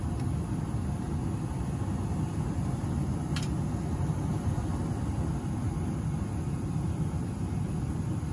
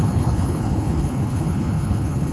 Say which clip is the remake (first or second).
second